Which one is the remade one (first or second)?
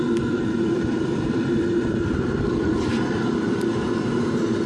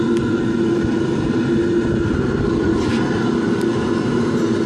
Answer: first